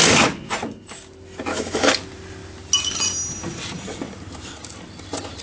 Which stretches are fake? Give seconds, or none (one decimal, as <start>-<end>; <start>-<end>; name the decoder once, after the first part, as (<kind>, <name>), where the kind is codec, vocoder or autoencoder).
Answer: 1.5-2.0 (autoencoder, DAC-VAE)